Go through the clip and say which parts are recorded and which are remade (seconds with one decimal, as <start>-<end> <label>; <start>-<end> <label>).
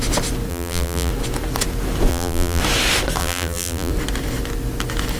0.0-0.5 recorded; 0.5-1.1 remade; 1.1-2.1 recorded; 2.1-2.6 remade; 2.6-3.2 recorded; 3.2-3.9 remade; 3.9-5.2 recorded